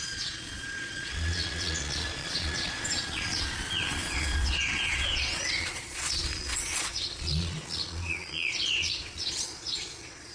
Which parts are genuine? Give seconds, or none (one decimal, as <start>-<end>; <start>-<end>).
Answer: none